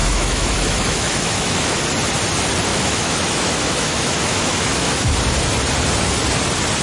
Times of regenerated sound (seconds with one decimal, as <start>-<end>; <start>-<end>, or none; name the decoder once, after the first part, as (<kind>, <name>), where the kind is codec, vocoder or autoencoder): 0.0-1.8 (autoencoder, DAC-VAE); 2.7-5.1